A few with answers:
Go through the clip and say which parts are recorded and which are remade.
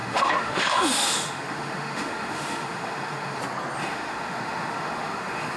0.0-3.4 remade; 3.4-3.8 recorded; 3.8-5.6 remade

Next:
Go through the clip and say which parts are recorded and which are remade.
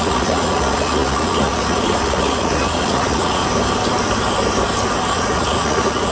0.0-3.4 remade; 3.4-5.1 recorded; 5.1-6.1 remade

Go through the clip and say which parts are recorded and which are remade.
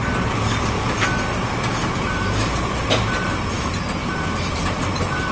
0.0-1.8 recorded; 1.8-3.1 remade; 3.1-4.0 recorded; 4.0-5.3 remade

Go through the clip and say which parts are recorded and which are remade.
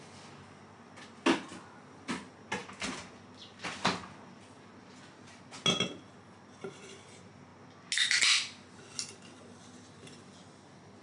0.0-11.0 recorded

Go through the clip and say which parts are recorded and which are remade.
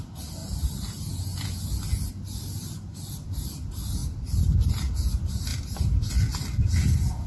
0.0-0.4 recorded; 0.4-1.6 remade; 1.6-4.0 recorded; 4.0-4.9 remade; 4.9-5.5 recorded; 5.5-6.1 remade; 6.1-7.3 recorded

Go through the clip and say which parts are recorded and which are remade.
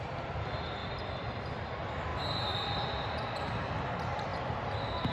0.0-0.8 recorded; 0.8-1.4 remade; 1.4-5.1 recorded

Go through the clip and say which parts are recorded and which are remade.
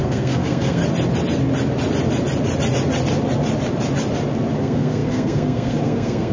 0.0-0.8 remade; 0.8-4.6 recorded; 4.6-6.3 remade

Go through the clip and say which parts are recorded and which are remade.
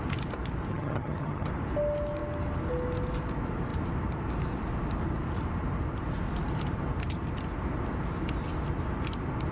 0.0-0.7 recorded; 0.7-1.5 remade; 1.5-9.5 recorded